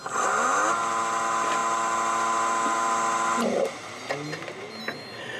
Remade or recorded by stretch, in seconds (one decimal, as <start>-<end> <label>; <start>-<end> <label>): 0.0-5.4 recorded